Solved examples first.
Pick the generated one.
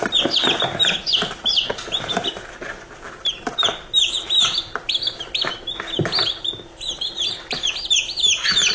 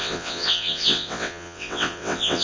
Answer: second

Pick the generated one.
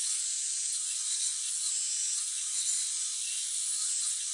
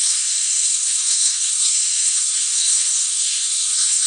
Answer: second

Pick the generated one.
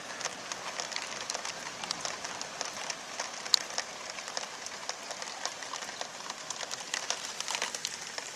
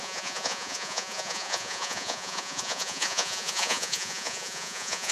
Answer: second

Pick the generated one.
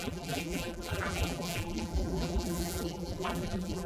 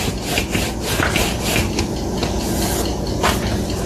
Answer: first